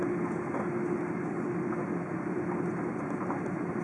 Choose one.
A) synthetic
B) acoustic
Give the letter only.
B